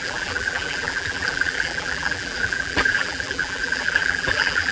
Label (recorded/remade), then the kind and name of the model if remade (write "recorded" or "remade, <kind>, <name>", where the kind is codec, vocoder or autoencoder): remade, vocoder, BigVGAN v2